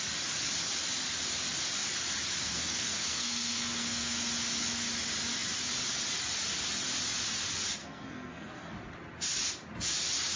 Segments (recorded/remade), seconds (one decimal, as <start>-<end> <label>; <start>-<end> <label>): 0.0-2.4 recorded; 2.4-4.2 remade; 4.2-7.8 recorded; 7.8-8.7 remade; 8.7-10.4 recorded